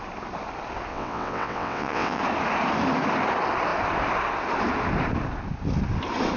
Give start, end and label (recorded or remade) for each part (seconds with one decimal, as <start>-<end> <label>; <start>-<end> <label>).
0.0-0.9 recorded; 0.9-2.2 remade; 2.2-6.4 recorded